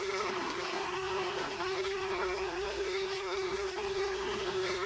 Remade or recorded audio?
remade